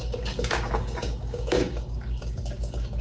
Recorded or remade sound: remade